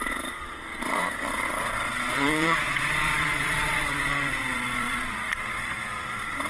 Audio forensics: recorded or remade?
remade